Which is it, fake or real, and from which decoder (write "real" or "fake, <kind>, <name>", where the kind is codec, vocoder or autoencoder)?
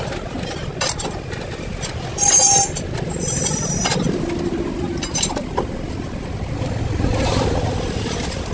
real